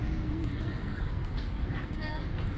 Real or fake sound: fake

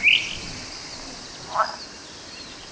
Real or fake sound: real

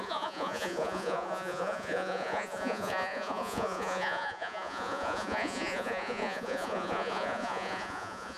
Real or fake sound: fake